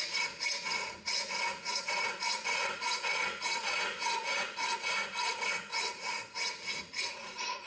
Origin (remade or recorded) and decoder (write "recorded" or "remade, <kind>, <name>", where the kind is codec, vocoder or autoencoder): remade, vocoder, Vocos